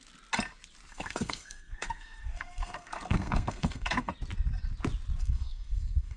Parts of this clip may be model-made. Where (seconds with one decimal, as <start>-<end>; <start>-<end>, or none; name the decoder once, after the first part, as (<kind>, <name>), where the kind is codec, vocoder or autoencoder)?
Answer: 0.9-4.1 (codec, SNAC); 5.2-6.2